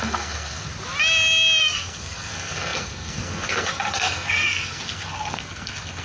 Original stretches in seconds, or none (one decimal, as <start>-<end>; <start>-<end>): 0.7-1.6